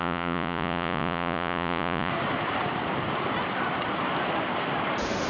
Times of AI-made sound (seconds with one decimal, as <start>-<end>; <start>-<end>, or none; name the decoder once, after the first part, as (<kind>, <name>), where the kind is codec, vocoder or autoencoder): 0.0-2.1 (vocoder, Vocos)